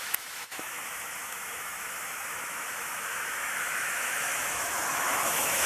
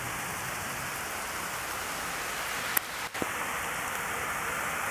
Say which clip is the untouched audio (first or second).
second